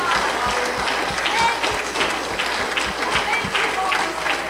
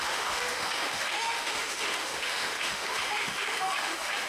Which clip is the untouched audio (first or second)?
first